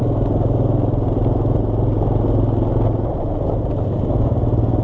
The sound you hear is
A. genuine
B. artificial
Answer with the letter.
A